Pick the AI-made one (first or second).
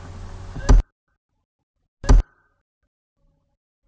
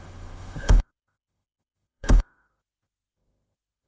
second